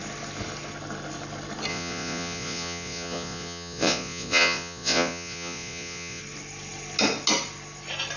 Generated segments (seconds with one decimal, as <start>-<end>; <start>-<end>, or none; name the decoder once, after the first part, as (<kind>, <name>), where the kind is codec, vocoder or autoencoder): 1.7-6.2 (vocoder, Vocos)